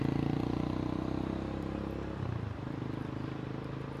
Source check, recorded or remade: recorded